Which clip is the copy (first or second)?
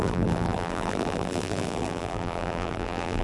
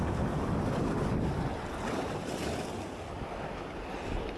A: first